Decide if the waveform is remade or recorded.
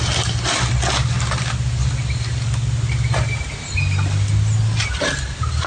recorded